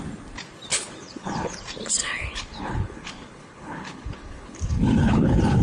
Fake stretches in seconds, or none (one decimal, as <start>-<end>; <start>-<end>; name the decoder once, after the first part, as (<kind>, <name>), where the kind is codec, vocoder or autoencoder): 0.7-1.6 (codec, HILCodec); 2.0-5.6